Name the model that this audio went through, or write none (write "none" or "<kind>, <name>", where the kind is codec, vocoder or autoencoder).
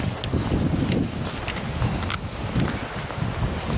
none